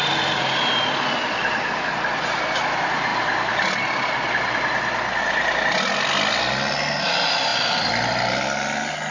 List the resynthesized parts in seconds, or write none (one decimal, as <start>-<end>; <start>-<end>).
none